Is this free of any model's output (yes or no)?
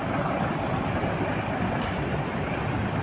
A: no